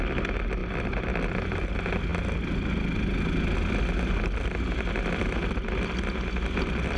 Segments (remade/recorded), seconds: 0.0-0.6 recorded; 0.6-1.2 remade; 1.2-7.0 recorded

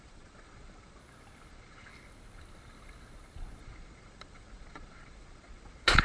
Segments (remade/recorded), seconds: 0.0-1.0 remade; 1.0-1.5 recorded; 1.5-1.9 remade; 1.9-3.6 recorded; 3.6-6.0 remade